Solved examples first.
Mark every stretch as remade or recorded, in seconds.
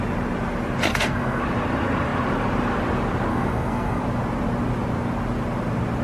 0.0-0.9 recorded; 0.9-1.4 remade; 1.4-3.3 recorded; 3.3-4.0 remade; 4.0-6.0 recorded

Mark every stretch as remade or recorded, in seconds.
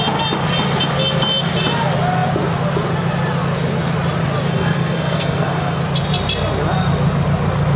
0.0-4.5 recorded; 4.5-5.8 remade; 5.8-7.8 recorded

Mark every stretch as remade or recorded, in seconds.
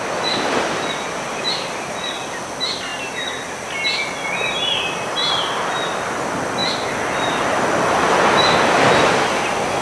0.0-9.8 recorded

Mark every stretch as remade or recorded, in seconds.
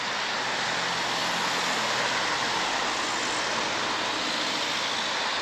0.0-5.4 recorded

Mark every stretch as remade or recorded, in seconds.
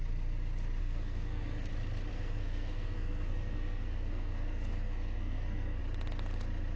0.0-0.8 recorded; 0.8-1.7 remade; 1.7-2.1 recorded; 2.1-5.8 remade; 5.8-6.8 recorded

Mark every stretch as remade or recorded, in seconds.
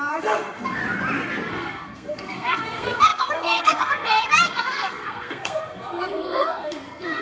0.0-0.8 remade; 0.8-1.5 recorded; 1.5-7.2 remade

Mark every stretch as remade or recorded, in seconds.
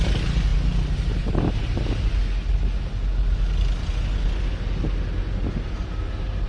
0.0-6.5 recorded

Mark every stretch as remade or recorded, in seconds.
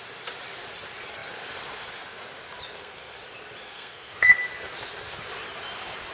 0.0-2.7 recorded; 2.7-3.2 remade; 3.2-3.6 recorded; 3.6-4.3 remade; 4.3-6.1 recorded